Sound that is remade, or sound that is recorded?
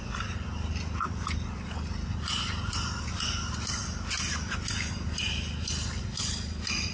recorded